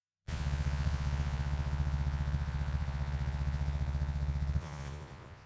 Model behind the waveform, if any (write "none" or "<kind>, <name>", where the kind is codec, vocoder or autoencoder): vocoder, Vocos